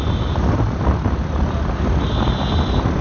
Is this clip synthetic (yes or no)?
no